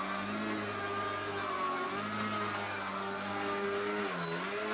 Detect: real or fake real